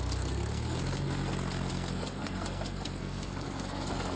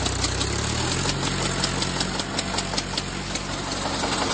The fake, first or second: first